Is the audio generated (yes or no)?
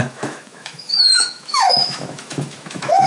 yes